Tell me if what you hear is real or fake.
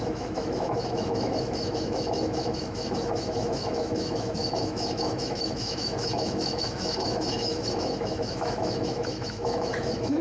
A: fake